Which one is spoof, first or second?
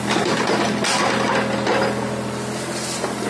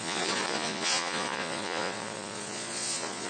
second